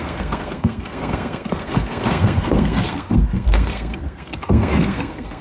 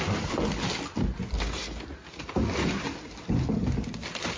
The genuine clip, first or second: second